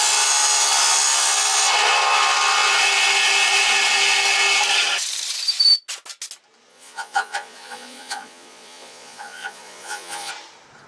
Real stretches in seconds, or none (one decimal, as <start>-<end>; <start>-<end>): 0.0-6.7; 10.3-10.9